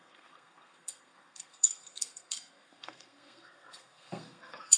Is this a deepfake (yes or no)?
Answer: yes